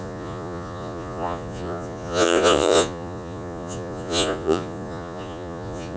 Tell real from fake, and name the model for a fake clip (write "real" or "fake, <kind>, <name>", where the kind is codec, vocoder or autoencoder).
fake, vocoder, Vocos